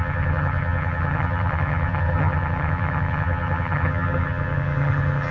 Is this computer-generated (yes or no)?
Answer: yes